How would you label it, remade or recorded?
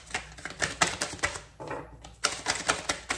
recorded